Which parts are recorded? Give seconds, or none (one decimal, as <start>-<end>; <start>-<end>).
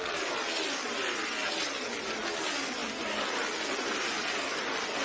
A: 0.0-5.0